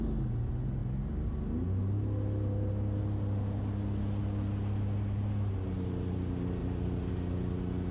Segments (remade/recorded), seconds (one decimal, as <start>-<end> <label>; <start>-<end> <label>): 0.0-6.6 recorded; 6.6-7.1 remade; 7.1-7.9 recorded